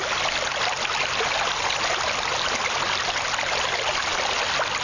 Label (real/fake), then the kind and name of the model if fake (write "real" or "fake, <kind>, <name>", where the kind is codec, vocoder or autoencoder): real